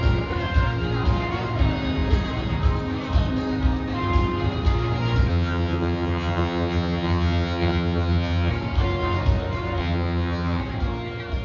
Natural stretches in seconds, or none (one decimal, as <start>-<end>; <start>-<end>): 0.0-5.3; 8.5-9.8; 10.6-11.4